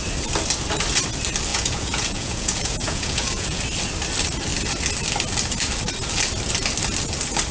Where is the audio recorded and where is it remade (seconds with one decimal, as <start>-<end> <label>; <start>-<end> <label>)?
0.0-1.5 recorded; 1.5-3.6 remade; 3.6-7.5 recorded